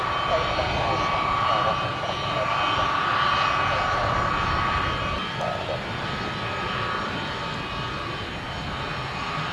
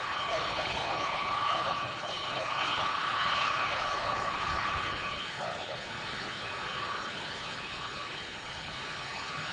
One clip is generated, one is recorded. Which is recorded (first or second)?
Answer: first